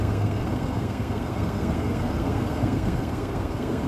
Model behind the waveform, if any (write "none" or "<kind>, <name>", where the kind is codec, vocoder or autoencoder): codec, SNAC